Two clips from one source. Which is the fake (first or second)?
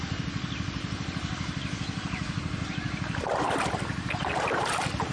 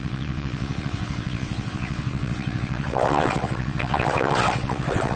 second